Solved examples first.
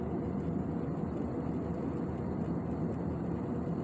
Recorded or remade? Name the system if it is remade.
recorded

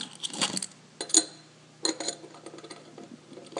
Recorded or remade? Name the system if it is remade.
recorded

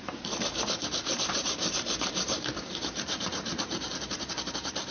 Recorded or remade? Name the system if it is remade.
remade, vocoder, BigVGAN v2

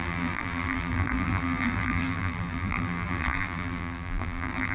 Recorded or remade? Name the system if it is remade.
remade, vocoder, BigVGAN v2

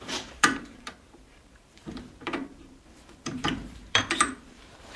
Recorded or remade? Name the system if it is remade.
remade, vocoder, BigVGAN v2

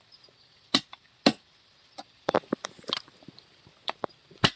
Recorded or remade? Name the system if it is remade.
remade, vocoder, BigVGAN v2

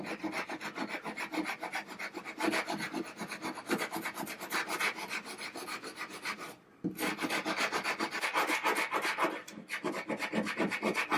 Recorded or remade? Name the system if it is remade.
recorded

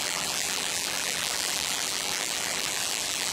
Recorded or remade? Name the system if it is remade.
remade, vocoder, BigVGAN v2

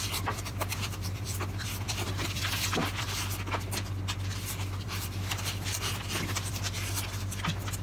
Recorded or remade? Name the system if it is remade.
remade, vocoder, BigVGAN v2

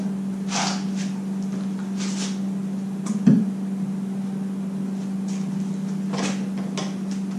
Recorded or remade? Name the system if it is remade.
recorded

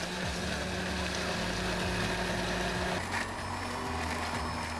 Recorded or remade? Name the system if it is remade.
recorded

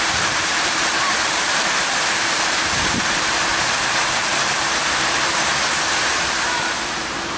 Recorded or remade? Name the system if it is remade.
remade, vocoder, BigVGAN v2